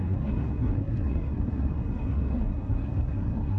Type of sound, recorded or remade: remade